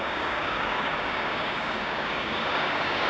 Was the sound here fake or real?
fake